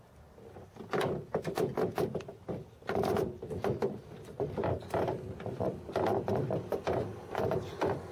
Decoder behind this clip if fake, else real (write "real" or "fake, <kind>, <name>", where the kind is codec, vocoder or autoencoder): real